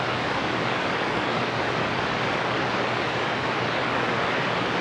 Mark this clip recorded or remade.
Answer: remade